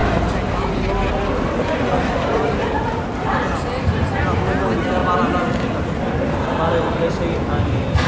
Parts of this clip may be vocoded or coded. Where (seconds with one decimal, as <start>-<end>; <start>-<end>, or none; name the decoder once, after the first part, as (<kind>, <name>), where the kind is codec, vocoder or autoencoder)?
none